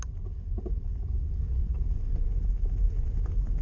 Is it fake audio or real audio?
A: real